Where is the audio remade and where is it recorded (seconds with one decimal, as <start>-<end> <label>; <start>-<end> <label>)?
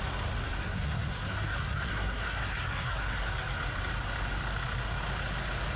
0.0-0.6 recorded; 0.6-3.3 remade; 3.3-5.8 recorded